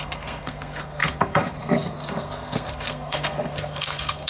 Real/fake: fake